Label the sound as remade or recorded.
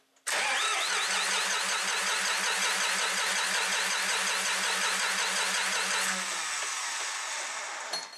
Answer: recorded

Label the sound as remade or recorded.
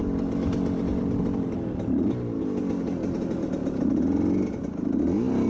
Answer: recorded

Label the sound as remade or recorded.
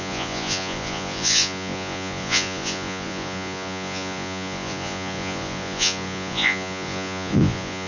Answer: remade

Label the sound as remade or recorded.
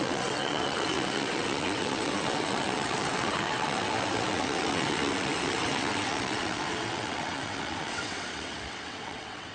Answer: remade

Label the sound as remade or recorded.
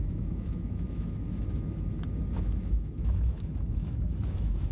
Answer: remade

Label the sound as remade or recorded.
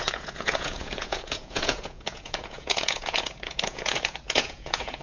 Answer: remade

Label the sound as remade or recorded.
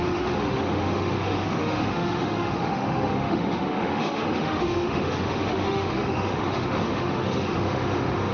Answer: remade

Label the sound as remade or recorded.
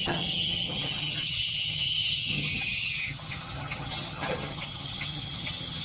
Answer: remade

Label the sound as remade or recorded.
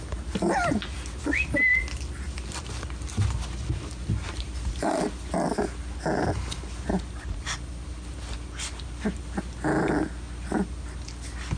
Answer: recorded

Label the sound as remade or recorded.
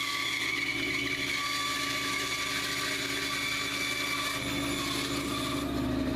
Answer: recorded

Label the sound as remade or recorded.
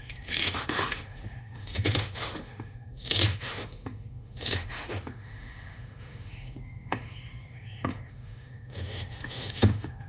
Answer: remade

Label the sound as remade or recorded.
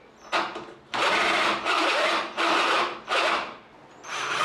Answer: recorded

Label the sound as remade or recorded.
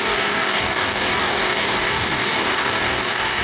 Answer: remade